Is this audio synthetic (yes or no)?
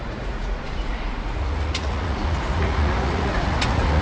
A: yes